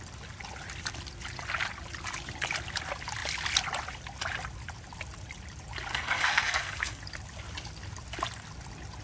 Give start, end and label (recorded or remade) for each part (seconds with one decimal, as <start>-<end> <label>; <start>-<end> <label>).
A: 0.0-5.9 recorded; 5.9-7.0 remade; 7.0-9.0 recorded